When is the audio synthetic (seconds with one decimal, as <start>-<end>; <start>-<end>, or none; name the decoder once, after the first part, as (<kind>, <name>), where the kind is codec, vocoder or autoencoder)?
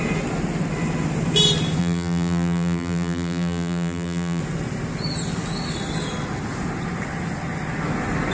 1.8-4.4 (vocoder, BigVGAN v2)